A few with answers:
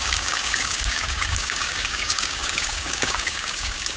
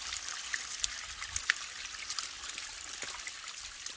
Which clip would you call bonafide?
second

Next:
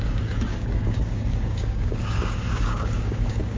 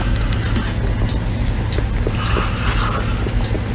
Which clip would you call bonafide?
second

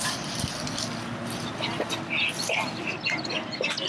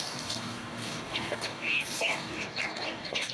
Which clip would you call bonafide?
first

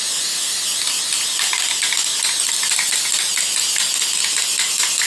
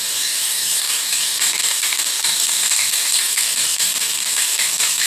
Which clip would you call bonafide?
first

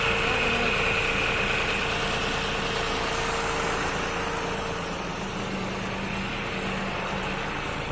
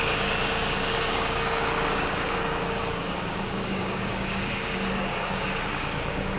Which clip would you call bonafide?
first